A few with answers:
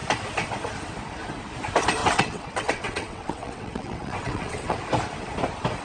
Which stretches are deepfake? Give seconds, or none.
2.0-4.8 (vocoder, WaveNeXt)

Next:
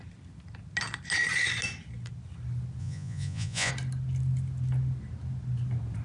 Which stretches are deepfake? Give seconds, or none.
2.8-3.7 (vocoder, Vocos)

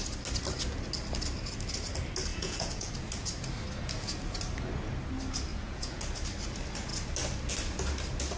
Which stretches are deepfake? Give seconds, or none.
2.3-2.9 (vocoder, Vocos); 5.5-6.0

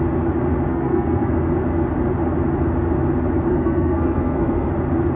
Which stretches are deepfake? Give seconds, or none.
0.7-1.3 (codec, SNAC); 3.5-4.7